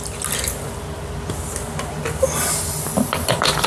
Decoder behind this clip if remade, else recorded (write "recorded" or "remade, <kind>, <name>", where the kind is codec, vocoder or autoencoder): recorded